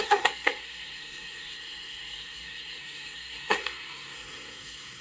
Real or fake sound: fake